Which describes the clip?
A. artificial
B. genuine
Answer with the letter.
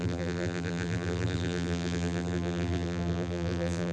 A